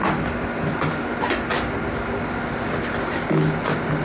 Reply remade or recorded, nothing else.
recorded